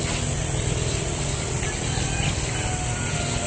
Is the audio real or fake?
real